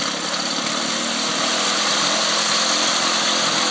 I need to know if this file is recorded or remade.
recorded